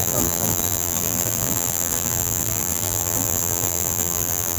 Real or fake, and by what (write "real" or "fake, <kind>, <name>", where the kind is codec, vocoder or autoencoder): fake, vocoder, BigVGAN v2